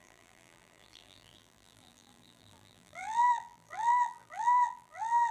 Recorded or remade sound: remade